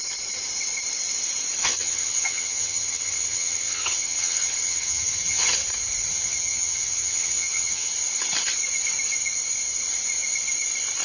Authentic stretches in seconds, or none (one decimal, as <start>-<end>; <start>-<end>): 0.0-1.6; 5.5-6.1; 7.9-11.0